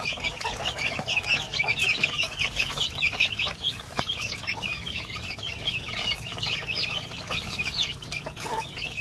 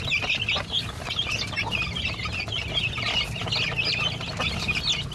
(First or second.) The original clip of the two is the second